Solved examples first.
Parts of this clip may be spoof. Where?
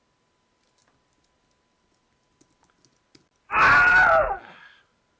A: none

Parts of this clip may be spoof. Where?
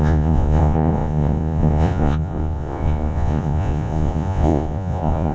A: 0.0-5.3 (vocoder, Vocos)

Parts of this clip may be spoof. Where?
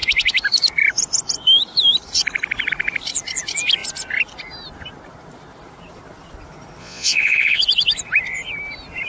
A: 6.8-7.6 (vocoder, Vocos)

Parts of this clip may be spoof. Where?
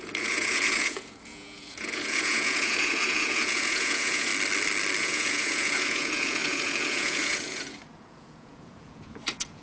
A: 0.0-4.3 (vocoder, Vocos); 5.0-9.6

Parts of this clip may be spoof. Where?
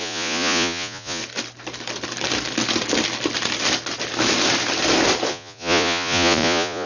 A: 0.0-1.2 (vocoder, Vocos); 5.3-6.9